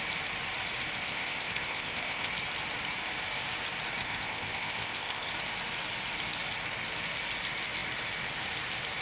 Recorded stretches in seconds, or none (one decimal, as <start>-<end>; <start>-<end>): 0.0-1.1; 2.3-4.0; 5.3-9.0